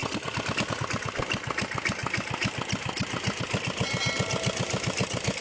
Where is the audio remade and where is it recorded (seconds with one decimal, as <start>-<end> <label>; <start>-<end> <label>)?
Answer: 0.0-5.4 recorded